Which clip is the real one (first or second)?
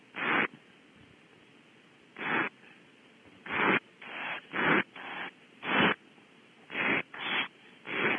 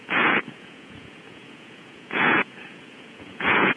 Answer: first